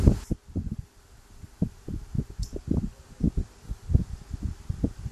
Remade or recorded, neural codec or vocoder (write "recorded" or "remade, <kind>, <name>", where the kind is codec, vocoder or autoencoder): recorded